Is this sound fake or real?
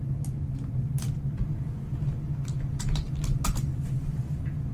real